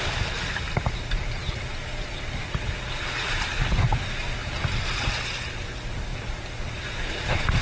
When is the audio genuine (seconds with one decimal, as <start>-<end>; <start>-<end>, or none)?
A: 0.0-7.6